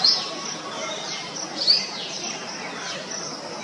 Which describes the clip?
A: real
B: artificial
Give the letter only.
A